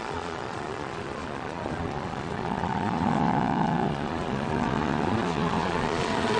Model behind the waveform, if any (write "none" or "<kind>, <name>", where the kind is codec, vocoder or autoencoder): vocoder, Vocos